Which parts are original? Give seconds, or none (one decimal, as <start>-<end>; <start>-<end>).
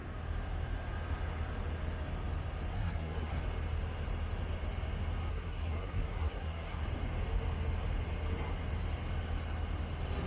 0.0-2.7; 3.4-5.3; 6.8-10.3